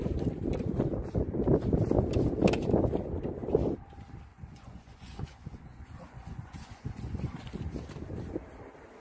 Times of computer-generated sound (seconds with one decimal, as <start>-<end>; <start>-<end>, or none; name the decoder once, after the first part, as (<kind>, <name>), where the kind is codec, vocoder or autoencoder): 4.3-7.5 (vocoder, Vocos)